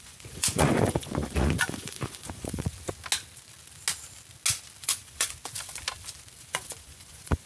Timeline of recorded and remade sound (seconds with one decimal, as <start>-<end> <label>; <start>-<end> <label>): 0.0-2.7 remade; 2.7-4.8 recorded; 4.8-5.4 remade; 5.4-6.4 recorded; 6.4-7.5 remade